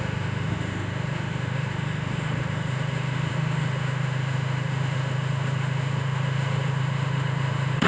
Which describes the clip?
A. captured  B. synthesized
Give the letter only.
B